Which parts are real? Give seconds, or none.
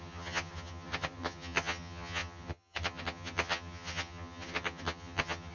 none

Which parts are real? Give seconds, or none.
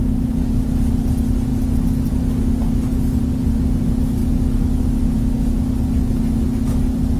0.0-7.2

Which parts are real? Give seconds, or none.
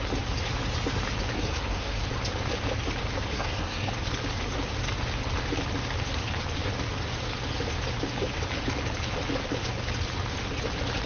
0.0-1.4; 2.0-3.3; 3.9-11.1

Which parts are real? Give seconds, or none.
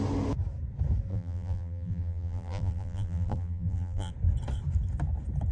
0.0-1.1; 4.1-5.5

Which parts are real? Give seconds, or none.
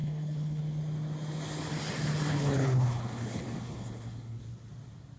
0.6-2.3; 4.4-5.2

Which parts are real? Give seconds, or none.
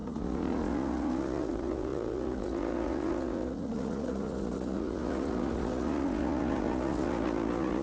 none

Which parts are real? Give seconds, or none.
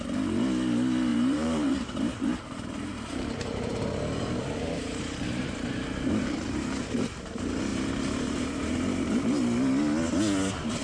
0.0-1.1; 2.4-2.9; 6.9-7.7; 9.2-10.8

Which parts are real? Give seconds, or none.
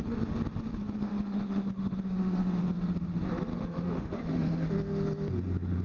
0.0-1.1; 2.6-3.5; 4.7-5.8